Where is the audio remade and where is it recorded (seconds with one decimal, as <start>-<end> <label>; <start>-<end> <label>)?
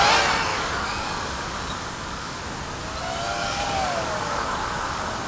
0.0-0.5 recorded; 0.5-2.4 remade; 2.4-3.4 recorded; 3.4-5.3 remade